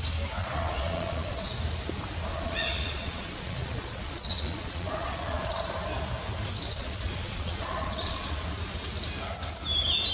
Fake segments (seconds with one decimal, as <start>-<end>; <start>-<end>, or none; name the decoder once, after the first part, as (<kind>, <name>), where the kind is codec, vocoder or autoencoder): 0.4-1.5 (vocoder, Vocos); 2.3-5.7; 6.7-8.3